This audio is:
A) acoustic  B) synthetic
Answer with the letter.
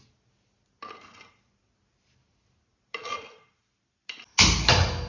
A